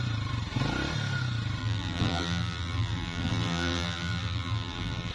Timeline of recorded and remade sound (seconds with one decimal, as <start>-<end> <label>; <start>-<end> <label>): 0.0-1.6 recorded; 1.6-5.1 remade